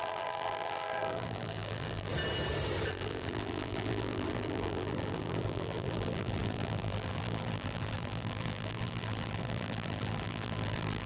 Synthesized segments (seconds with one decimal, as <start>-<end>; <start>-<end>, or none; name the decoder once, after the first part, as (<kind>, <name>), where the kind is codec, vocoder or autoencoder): 0.0-2.1 (vocoder, BigVGAN v2); 2.9-11.1